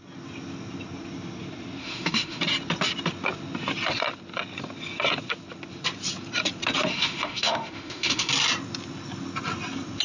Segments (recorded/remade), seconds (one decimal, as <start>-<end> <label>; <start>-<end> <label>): 0.0-1.8 recorded; 1.8-2.4 remade; 2.4-6.9 recorded; 6.9-8.3 remade; 8.3-10.0 recorded

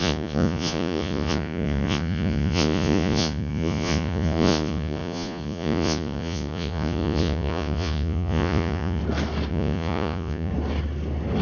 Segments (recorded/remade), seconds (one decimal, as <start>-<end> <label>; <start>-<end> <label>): 0.0-9.0 remade; 9.0-9.5 recorded; 9.5-10.5 remade; 10.5-11.4 recorded

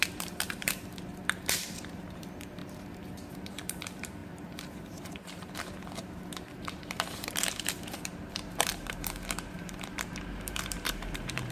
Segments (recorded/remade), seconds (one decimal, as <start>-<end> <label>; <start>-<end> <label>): 0.0-11.5 remade